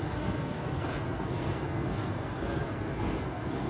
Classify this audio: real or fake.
fake